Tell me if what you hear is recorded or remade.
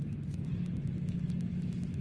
recorded